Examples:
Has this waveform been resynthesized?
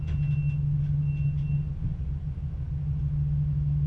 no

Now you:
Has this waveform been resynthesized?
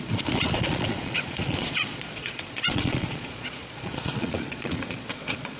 yes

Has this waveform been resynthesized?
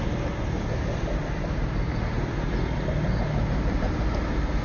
no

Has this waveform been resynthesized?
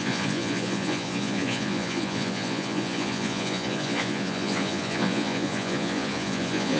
yes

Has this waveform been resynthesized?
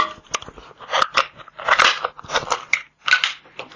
no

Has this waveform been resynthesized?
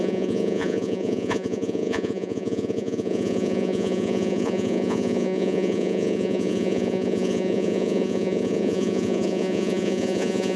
yes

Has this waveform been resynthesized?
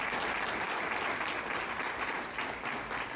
no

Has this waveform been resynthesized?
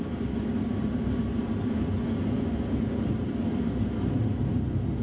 no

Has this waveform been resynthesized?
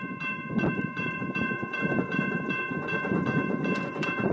yes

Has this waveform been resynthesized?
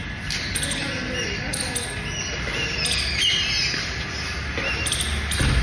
no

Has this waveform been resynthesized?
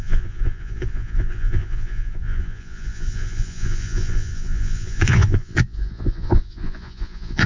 yes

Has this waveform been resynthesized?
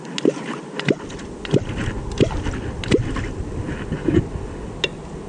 no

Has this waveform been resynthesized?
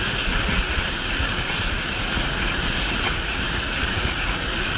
yes